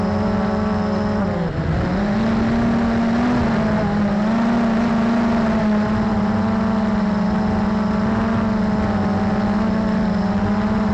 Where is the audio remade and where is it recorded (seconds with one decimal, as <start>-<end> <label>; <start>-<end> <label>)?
0.0-10.9 recorded